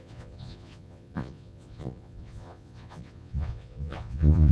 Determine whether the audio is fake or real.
fake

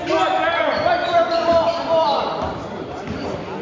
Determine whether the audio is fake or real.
real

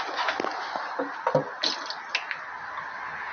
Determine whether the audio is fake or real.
real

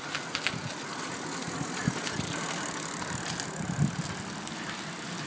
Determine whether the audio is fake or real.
real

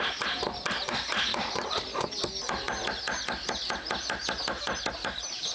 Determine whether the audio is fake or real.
real